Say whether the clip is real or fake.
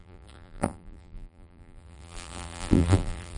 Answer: fake